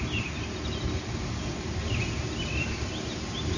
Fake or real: real